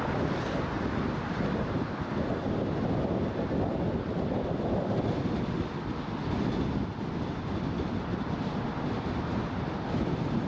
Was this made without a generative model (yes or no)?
yes